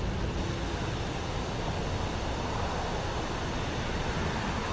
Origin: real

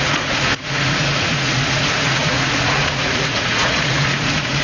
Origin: fake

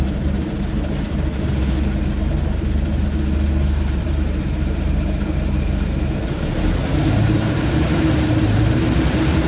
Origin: fake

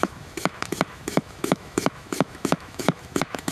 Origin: fake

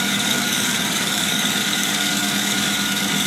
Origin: fake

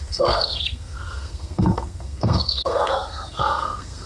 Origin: fake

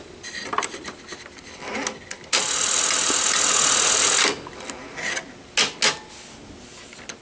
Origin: real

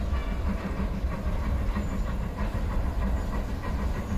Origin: real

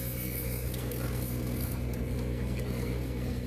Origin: fake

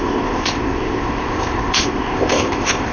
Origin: fake